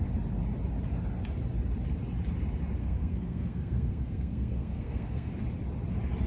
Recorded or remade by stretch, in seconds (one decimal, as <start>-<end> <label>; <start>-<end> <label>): 0.0-2.8 recorded; 2.8-5.3 remade; 5.3-6.3 recorded